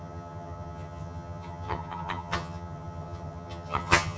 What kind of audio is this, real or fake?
fake